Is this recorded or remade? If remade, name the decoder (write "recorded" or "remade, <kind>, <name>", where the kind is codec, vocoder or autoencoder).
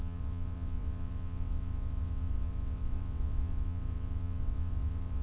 remade, vocoder, WaveNeXt